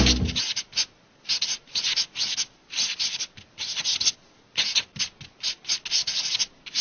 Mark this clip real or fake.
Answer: real